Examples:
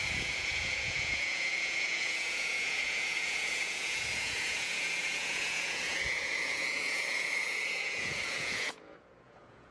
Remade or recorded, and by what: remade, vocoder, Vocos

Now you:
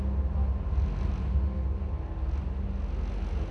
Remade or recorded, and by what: recorded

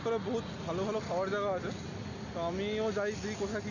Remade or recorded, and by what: recorded